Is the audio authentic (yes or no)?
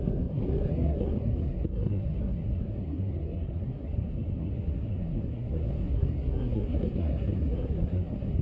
no